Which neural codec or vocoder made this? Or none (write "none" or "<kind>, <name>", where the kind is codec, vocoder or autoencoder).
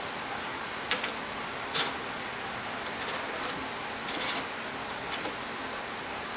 none